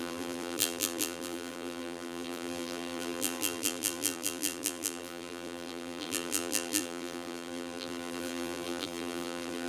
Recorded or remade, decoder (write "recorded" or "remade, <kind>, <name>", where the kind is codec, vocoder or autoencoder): remade, vocoder, BigVGAN v2